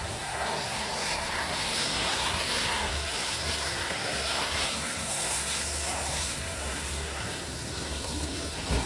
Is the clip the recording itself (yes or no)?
no